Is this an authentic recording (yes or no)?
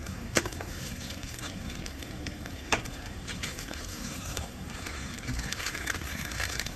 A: no